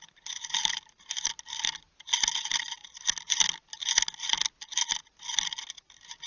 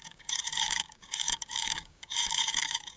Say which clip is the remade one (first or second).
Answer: second